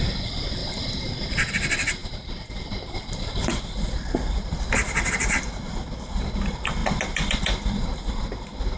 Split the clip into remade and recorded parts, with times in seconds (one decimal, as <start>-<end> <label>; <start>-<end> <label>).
0.0-2.0 recorded; 2.0-5.1 remade; 5.1-6.8 recorded; 6.8-7.8 remade; 7.8-8.8 recorded